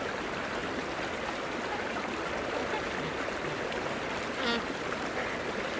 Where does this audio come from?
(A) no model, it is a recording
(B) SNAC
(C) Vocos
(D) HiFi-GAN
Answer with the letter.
A